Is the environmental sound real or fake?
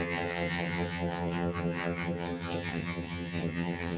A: fake